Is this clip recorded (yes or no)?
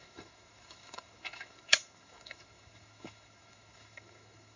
no